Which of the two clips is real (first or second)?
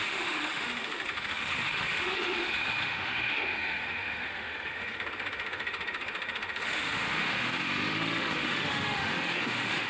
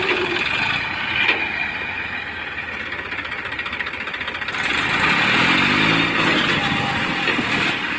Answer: second